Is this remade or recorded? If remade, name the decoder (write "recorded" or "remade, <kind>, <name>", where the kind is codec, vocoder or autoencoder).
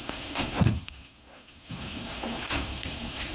remade, codec, SNAC